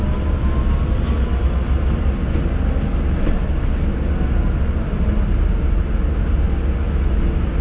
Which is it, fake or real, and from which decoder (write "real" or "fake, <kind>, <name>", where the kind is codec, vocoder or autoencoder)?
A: real